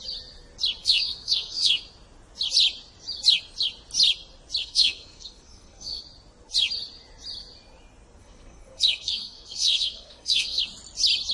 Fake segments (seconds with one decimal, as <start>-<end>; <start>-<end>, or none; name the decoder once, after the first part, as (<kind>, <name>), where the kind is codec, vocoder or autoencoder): 0.8-1.8 (codec, SNAC); 4.6-6.0; 8.2-10.6